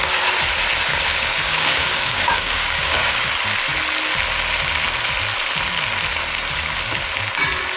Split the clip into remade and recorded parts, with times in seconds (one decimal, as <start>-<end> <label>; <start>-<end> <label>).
0.0-0.9 recorded; 0.9-3.3 remade; 3.3-7.8 recorded